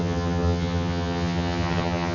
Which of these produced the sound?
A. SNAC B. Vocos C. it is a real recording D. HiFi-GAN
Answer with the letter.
D